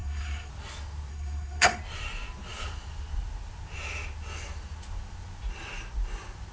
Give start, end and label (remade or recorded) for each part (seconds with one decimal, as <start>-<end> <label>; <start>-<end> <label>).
0.0-0.5 remade; 0.5-1.1 recorded; 1.1-1.8 remade; 1.8-6.5 recorded